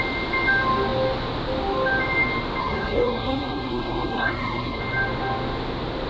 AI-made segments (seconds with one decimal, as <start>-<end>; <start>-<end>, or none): 2.6-4.8